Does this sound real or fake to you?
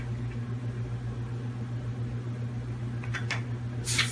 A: real